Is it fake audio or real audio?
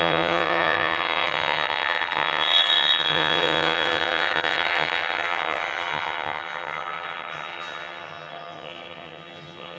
fake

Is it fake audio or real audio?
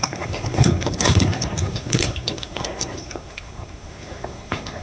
fake